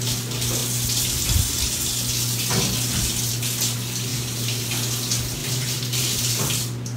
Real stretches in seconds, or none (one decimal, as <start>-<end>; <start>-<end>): 0.0-4.1; 4.7-5.4; 6.3-7.0